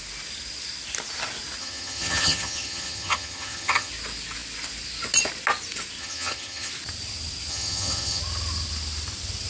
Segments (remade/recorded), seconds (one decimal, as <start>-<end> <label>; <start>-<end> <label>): 0.0-1.6 recorded; 1.6-3.9 remade; 3.9-6.0 recorded; 6.0-6.7 remade; 6.7-7.5 recorded; 7.5-8.2 remade; 8.2-9.5 recorded